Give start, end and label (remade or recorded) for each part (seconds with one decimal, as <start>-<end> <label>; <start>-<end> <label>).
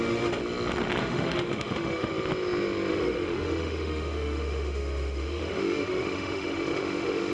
0.0-0.4 remade; 0.4-1.0 recorded; 1.0-2.1 remade; 2.1-2.9 recorded; 2.9-7.3 remade